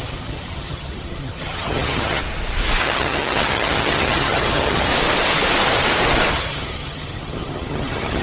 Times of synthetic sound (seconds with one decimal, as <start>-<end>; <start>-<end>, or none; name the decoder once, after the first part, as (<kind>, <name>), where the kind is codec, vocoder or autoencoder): 0.0-2.2 (vocoder, HiFi-GAN); 2.8-4.9; 6.3-8.2